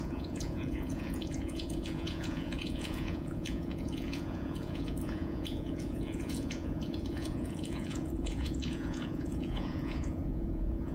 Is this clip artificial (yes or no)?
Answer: yes